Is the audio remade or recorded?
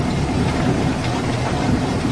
remade